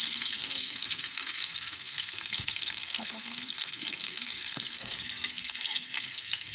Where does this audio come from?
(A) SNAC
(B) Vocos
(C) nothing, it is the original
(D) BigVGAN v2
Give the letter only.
A